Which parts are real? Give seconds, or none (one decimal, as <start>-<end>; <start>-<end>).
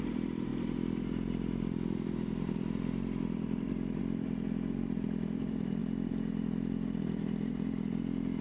none